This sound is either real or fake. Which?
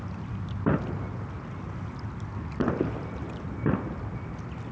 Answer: real